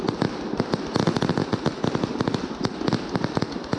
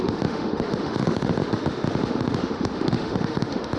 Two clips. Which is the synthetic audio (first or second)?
second